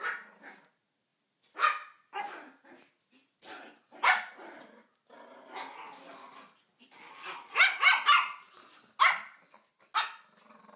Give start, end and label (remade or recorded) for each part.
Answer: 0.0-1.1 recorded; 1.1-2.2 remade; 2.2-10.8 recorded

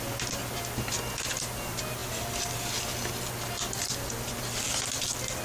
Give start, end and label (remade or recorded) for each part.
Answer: 0.0-5.4 recorded

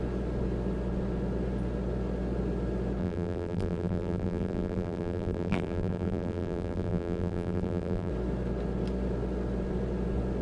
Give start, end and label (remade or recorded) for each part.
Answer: 0.0-3.0 recorded; 3.0-8.1 remade; 8.1-10.4 recorded

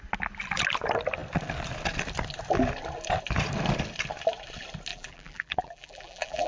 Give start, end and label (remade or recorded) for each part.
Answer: 0.0-4.9 recorded; 4.9-6.5 remade

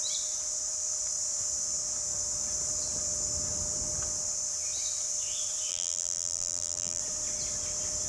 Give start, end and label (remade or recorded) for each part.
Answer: 0.0-5.7 recorded; 5.7-7.0 remade; 7.0-8.1 recorded

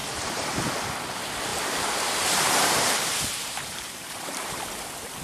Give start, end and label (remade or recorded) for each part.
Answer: 0.0-0.5 remade; 0.5-1.5 recorded; 1.5-4.6 remade; 4.6-5.2 recorded